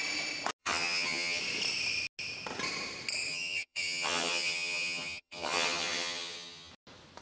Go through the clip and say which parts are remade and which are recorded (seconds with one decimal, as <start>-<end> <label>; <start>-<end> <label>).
0.0-0.6 recorded; 0.6-1.4 remade; 1.4-3.3 recorded; 3.3-6.7 remade; 6.7-7.2 recorded